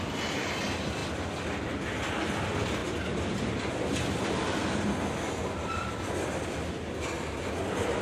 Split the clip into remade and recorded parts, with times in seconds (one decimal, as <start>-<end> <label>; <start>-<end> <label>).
0.0-8.0 recorded

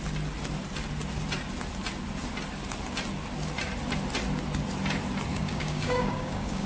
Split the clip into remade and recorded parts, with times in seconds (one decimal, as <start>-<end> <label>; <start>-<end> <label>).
0.0-5.3 recorded; 5.3-6.7 remade

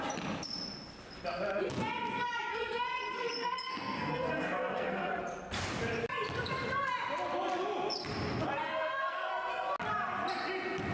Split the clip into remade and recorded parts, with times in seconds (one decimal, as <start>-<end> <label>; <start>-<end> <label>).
0.0-2.5 recorded; 2.5-5.2 remade; 5.2-8.6 recorded; 8.6-9.5 remade; 9.5-10.9 recorded

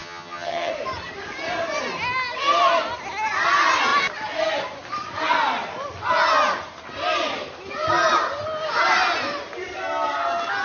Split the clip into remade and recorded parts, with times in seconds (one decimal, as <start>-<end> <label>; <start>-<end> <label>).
0.0-0.7 remade; 0.7-10.6 recorded